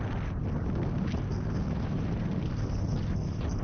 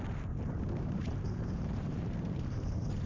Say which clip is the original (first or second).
first